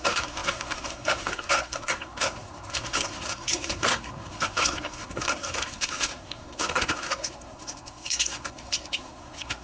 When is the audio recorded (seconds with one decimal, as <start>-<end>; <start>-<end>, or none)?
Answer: none